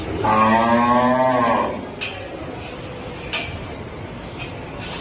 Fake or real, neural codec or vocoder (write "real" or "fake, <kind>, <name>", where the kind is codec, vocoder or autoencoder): real